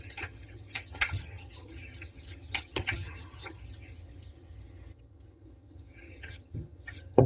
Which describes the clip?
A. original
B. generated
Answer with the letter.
B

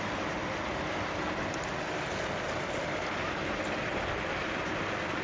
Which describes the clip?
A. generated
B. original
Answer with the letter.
B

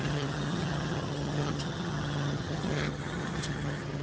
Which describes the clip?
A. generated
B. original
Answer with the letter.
A